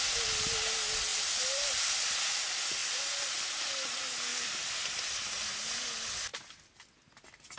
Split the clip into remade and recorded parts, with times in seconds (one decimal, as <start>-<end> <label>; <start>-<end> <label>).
0.0-1.1 recorded; 1.1-2.4 remade; 2.4-4.3 recorded; 4.3-5.1 remade; 5.1-6.3 recorded; 6.3-7.1 remade; 7.1-7.6 recorded